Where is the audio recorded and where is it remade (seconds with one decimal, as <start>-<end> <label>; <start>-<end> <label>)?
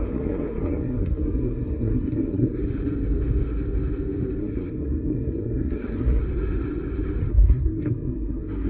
0.0-2.6 remade; 2.6-4.4 recorded; 4.4-6.2 remade; 6.2-7.3 recorded; 7.3-8.7 remade